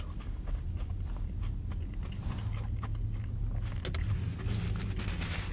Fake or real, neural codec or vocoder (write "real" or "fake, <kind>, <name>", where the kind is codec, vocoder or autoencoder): real